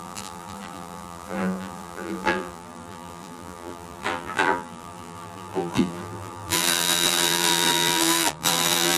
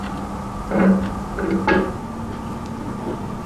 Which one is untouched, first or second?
second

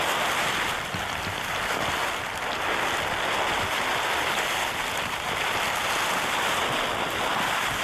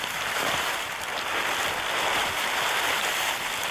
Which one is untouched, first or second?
first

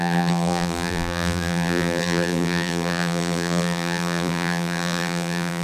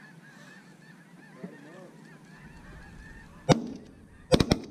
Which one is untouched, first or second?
second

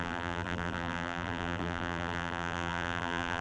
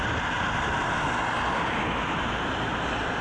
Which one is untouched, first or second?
second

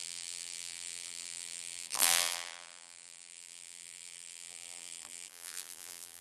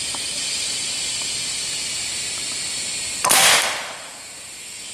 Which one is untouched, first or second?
second